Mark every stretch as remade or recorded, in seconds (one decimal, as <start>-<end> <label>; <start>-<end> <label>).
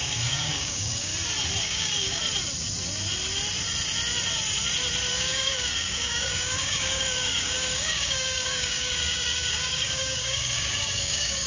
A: 0.0-1.1 remade; 1.1-1.6 recorded; 1.6-2.2 remade; 2.2-5.1 recorded; 5.1-11.5 remade